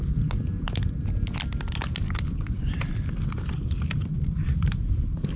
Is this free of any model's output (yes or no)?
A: yes